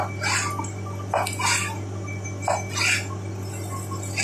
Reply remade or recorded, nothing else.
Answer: recorded